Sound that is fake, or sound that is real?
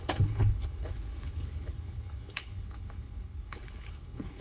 fake